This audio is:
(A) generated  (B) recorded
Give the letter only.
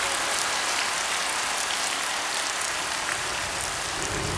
B